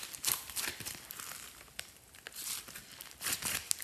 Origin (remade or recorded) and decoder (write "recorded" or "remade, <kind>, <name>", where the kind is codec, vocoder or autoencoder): recorded